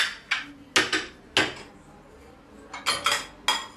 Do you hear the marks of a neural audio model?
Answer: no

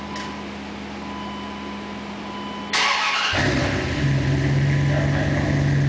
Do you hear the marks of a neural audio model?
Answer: no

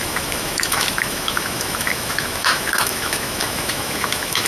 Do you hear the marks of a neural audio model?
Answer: yes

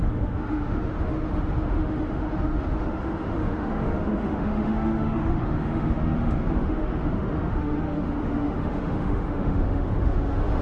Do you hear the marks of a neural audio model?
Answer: yes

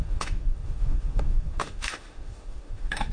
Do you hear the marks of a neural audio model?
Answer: yes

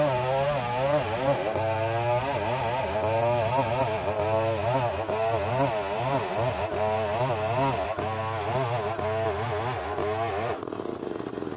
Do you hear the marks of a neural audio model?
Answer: no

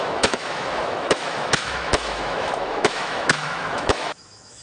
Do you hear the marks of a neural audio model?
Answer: yes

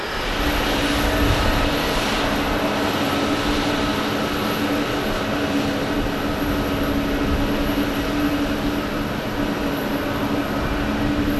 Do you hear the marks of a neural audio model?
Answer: no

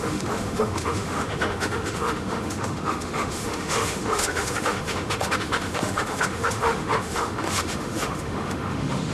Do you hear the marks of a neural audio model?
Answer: yes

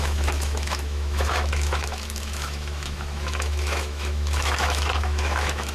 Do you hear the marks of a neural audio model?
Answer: yes